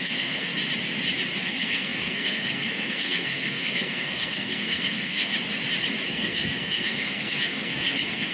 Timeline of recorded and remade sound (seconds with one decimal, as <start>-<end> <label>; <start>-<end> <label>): 0.0-0.5 remade; 0.5-1.4 recorded; 1.4-5.3 remade; 5.3-6.1 recorded; 6.1-8.3 remade